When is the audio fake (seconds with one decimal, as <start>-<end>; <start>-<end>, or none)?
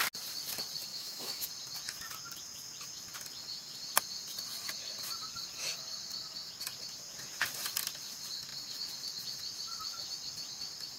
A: 0.9-1.5